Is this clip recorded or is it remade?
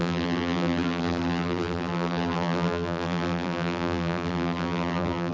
remade